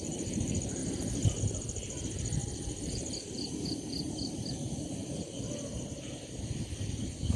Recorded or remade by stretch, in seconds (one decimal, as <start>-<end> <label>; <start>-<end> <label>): 0.0-0.8 remade; 0.8-1.4 recorded; 1.4-5.0 remade; 5.0-5.7 recorded; 5.7-7.4 remade